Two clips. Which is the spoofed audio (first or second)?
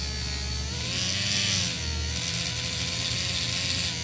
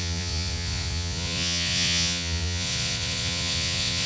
second